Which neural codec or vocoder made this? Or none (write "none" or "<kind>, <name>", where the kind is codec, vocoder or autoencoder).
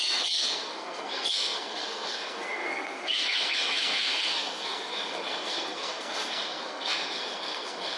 codec, SNAC